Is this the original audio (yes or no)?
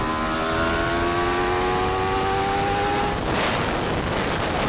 yes